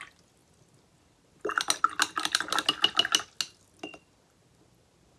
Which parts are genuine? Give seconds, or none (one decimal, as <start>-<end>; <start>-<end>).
0.0-5.2